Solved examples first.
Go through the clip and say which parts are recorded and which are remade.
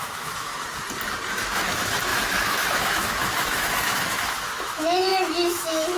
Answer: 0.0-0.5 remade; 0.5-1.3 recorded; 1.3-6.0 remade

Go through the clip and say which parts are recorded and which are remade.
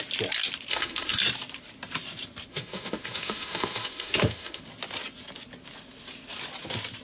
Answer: 0.0-0.7 recorded; 0.7-1.2 remade; 1.2-2.5 recorded; 2.5-4.6 remade; 4.6-7.0 recorded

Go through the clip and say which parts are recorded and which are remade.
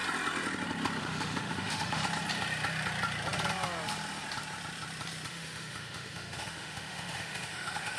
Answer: 0.0-1.0 recorded; 1.0-2.0 remade; 2.0-5.3 recorded; 5.3-8.0 remade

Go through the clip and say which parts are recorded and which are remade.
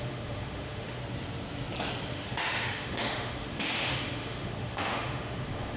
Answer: 0.0-1.0 remade; 1.0-2.1 recorded; 2.1-5.8 remade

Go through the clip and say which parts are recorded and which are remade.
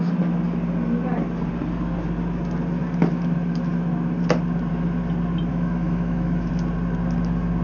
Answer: 0.0-5.5 recorded; 5.5-6.5 remade; 6.5-7.6 recorded